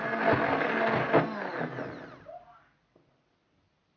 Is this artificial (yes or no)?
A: no